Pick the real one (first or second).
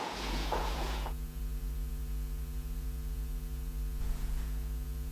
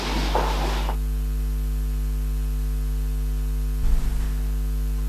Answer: second